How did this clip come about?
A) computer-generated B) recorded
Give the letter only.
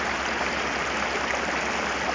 B